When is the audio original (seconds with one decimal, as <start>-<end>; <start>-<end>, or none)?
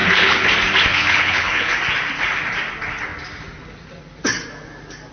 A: 0.5-0.9; 1.8-5.1